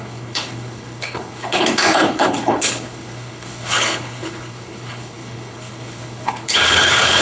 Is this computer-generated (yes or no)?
yes